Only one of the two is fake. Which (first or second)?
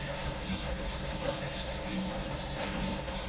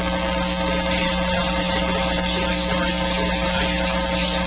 first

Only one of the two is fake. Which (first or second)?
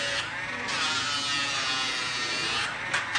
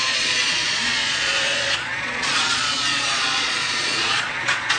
second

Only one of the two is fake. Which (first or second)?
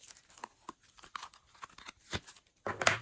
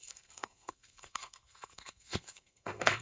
second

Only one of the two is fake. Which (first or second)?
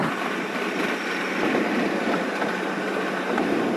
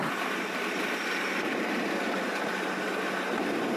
first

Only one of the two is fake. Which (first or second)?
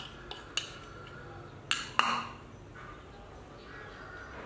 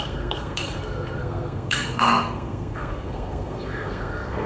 second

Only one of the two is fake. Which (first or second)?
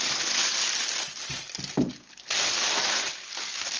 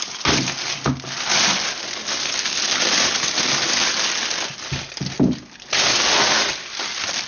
first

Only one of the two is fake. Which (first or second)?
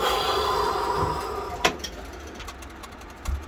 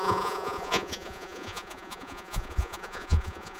second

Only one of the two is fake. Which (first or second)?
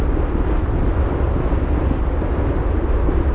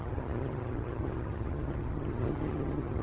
second